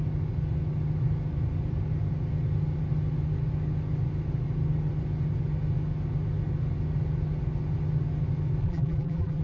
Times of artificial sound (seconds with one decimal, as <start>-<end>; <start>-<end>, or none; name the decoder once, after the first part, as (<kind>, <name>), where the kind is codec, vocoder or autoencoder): 8.6-9.4 (vocoder, BigVGAN v2)